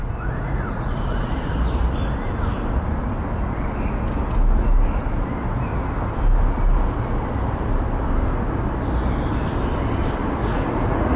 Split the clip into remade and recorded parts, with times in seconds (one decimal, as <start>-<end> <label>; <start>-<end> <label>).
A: 0.0-1.3 remade; 1.3-10.4 recorded; 10.4-11.2 remade